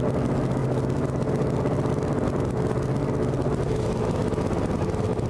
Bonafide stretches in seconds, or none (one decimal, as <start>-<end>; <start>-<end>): 0.0-5.3